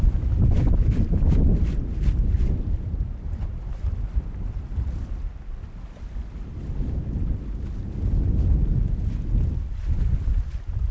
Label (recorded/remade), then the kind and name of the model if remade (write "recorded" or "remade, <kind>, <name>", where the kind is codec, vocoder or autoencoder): recorded